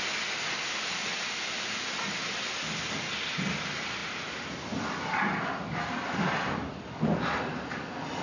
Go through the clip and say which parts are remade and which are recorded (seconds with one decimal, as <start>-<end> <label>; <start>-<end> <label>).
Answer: 0.0-8.2 recorded